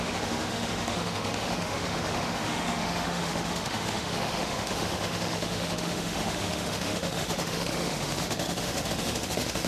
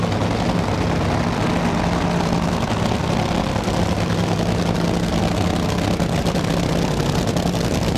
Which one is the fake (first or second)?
first